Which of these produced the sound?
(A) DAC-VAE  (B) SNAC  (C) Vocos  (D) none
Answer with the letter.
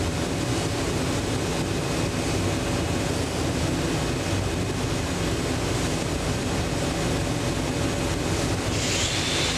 D